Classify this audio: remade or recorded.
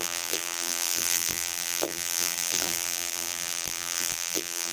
remade